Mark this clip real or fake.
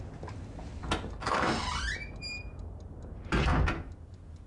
real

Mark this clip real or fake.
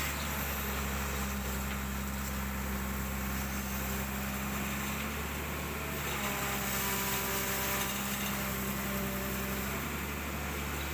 real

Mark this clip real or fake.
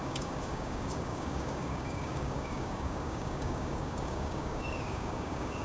fake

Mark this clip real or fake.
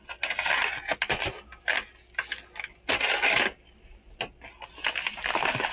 real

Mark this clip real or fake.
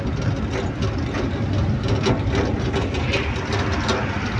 real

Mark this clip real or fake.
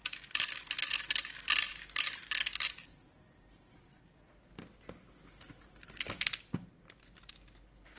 real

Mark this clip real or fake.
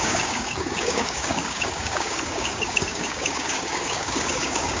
fake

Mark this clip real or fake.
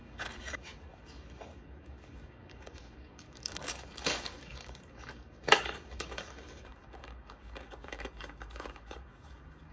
fake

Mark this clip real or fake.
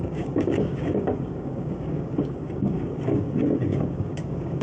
fake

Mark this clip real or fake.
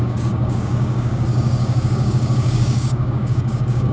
fake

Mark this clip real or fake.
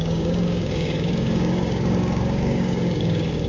fake